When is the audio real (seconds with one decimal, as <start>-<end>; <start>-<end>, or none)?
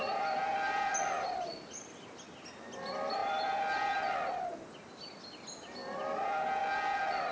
1.2-3.2; 3.8-7.3